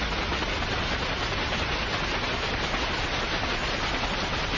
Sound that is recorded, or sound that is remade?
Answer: recorded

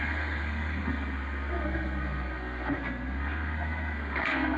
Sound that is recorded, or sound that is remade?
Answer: remade